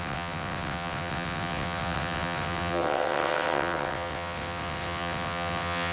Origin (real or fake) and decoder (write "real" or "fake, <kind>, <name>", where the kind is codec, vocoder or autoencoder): fake, vocoder, WaveNeXt